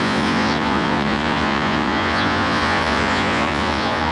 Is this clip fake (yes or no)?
yes